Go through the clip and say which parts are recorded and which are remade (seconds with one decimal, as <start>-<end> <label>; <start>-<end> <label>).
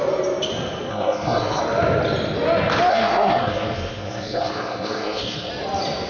0.0-0.9 recorded; 0.9-1.6 remade; 1.6-2.9 recorded; 2.9-5.5 remade; 5.5-6.1 recorded